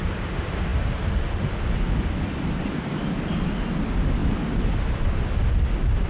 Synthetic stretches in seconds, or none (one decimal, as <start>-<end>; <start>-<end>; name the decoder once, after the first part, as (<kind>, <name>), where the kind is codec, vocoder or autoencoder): 4.2-4.7 (vocoder, BigVGAN v2)